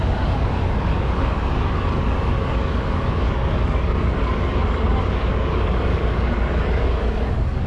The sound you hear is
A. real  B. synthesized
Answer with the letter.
B